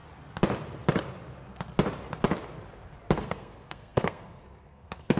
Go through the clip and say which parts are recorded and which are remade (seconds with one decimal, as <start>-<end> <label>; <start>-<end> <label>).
0.0-3.1 recorded; 3.1-5.2 remade